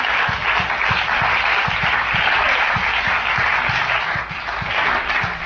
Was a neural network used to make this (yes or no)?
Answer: no